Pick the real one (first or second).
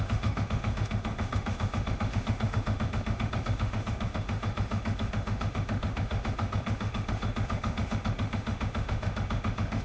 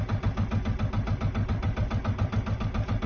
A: second